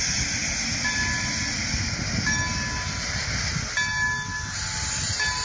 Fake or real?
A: real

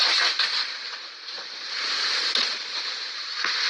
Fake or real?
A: real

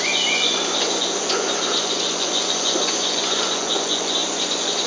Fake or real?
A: fake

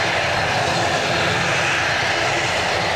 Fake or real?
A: real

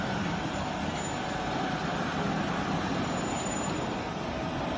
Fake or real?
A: real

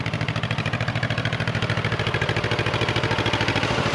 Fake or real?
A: real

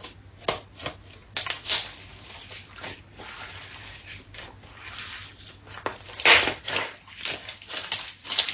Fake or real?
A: real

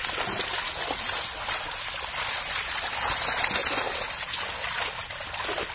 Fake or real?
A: real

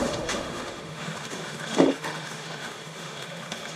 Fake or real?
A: fake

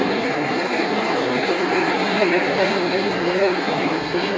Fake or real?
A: fake